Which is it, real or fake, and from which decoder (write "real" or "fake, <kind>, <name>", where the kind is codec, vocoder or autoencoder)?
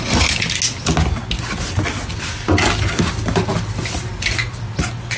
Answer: real